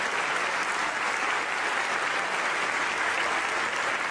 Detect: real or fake real